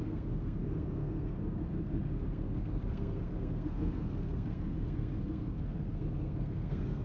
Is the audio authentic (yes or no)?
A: no